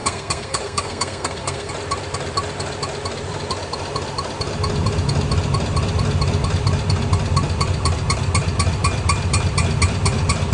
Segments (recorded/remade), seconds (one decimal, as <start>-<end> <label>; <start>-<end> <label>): 0.0-1.7 remade; 1.7-10.5 recorded